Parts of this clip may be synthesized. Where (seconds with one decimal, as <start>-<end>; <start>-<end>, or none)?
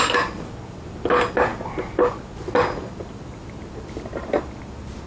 none